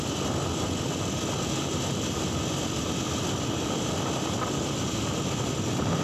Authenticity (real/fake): real